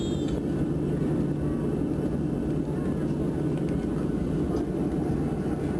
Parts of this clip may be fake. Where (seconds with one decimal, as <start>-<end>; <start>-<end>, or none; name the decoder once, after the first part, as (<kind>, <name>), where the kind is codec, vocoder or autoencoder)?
none